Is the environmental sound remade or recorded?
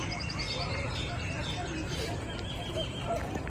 recorded